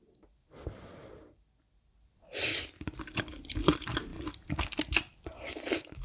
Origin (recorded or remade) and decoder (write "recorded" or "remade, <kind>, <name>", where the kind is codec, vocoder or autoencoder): recorded